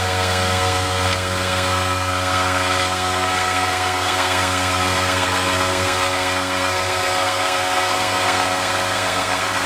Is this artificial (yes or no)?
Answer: yes